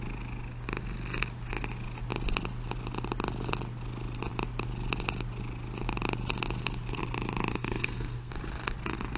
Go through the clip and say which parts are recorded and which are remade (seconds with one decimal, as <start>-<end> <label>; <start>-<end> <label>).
0.0-7.5 recorded; 7.5-8.3 remade; 8.3-9.2 recorded